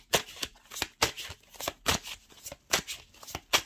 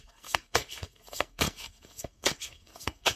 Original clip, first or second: first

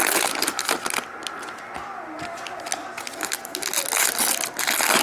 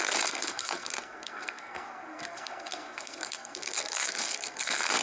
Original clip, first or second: first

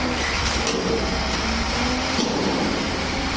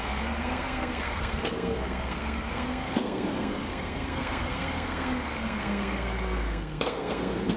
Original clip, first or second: first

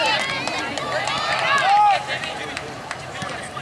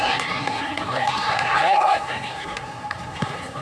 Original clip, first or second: first